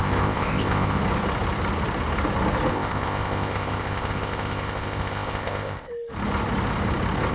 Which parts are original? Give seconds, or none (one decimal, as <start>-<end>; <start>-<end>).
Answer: 1.0-2.7; 5.9-7.3